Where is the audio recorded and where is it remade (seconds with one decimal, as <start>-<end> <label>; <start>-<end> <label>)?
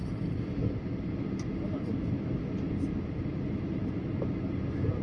0.0-5.0 recorded